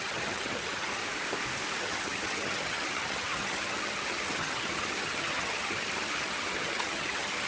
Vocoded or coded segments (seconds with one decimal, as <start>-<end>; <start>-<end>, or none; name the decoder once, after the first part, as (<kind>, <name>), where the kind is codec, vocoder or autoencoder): 0.0-1.0 (vocoder, HiFi-GAN); 1.8-7.5